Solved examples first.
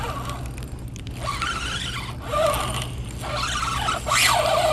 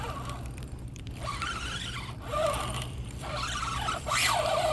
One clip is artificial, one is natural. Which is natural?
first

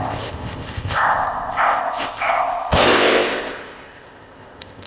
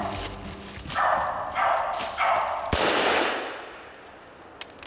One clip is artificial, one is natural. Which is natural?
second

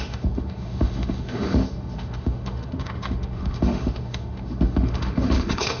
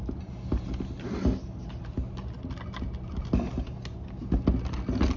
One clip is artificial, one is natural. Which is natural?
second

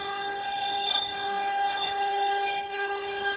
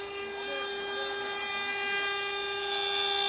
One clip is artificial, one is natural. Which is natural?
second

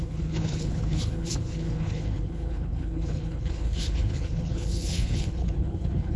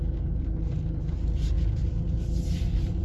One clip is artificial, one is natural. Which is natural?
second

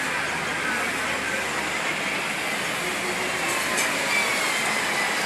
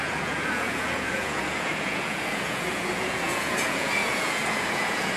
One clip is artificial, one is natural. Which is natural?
first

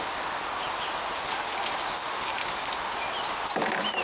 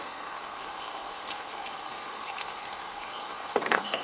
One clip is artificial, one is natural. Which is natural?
first